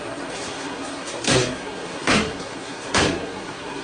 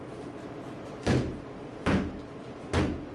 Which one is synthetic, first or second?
first